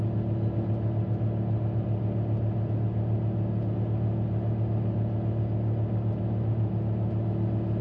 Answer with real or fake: real